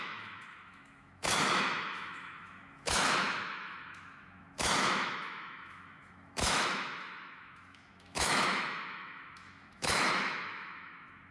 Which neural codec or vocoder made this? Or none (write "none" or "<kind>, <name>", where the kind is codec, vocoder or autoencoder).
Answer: autoencoder, DAC-VAE